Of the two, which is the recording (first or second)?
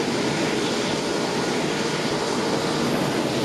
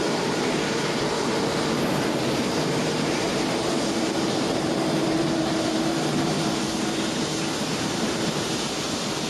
first